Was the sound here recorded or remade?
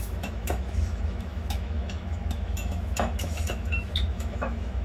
remade